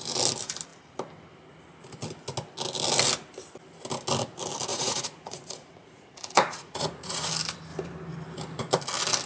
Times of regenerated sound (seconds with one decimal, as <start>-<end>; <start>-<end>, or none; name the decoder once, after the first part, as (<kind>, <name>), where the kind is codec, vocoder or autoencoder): 4.7-7.3 (vocoder, Vocos)